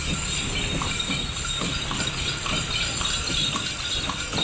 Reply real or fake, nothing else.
real